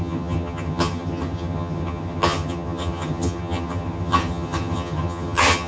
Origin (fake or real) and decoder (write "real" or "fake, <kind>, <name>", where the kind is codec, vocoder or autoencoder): fake, vocoder, HiFi-GAN